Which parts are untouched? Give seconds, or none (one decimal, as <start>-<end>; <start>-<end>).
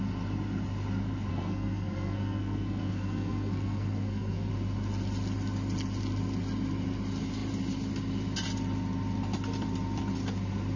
0.0-1.3; 4.5-10.8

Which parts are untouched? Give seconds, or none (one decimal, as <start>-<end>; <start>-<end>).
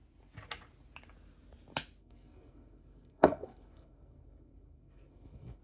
0.0-2.0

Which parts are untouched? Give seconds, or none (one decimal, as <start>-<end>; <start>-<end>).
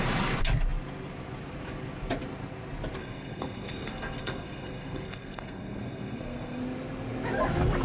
0.0-3.0; 6.6-7.8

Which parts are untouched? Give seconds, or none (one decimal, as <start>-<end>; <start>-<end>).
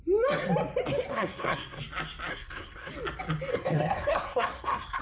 0.0-1.1; 1.8-2.3; 2.9-3.5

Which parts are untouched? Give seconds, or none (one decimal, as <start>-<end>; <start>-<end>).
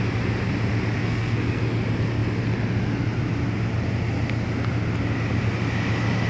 0.0-1.0; 1.6-6.3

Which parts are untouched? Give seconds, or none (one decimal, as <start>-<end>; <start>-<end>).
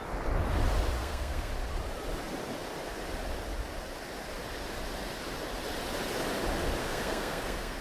0.0-1.0; 1.5-6.8